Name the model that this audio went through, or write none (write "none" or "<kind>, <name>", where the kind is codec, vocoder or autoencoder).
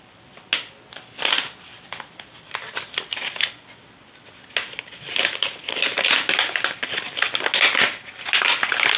none